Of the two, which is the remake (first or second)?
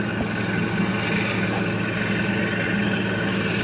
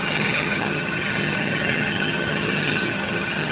second